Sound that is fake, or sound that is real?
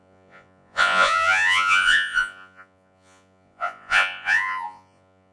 fake